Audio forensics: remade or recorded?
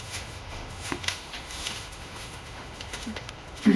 remade